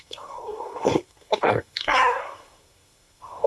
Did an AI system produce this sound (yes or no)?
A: yes